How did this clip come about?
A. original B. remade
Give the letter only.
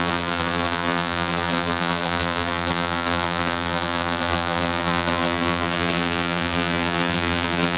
B